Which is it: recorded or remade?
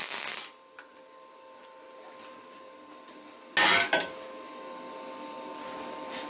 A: recorded